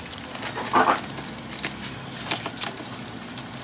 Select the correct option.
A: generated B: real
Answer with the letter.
B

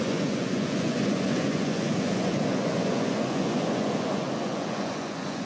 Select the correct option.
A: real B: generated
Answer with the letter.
B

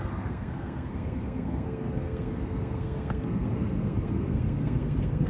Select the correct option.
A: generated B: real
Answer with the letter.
A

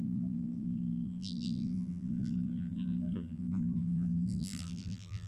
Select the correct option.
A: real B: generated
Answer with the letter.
B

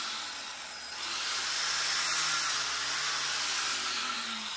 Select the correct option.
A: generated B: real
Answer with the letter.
B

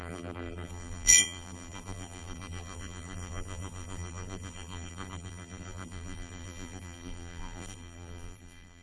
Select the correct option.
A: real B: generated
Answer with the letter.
B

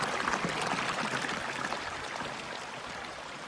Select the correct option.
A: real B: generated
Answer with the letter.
A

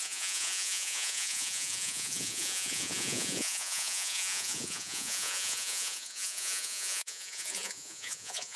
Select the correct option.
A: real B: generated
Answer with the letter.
B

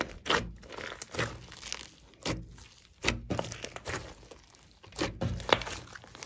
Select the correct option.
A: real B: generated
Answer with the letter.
A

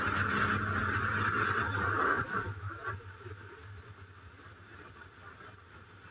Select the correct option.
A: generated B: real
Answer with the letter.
B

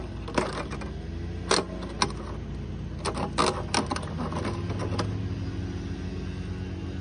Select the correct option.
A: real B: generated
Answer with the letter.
A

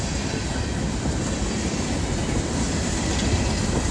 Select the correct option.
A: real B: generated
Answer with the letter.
A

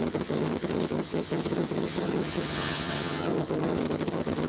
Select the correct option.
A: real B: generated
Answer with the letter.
B